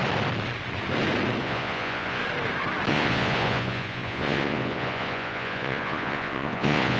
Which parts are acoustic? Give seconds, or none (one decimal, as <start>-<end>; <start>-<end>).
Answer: 0.0-1.4; 2.2-2.9